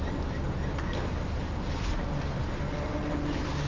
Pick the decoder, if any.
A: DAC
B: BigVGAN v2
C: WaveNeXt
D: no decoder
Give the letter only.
D